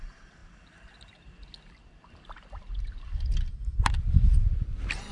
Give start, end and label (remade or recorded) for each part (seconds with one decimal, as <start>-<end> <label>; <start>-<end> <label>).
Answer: 0.0-5.1 recorded